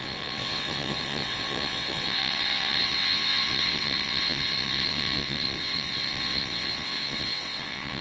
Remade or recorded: remade